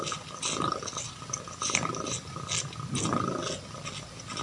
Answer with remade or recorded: recorded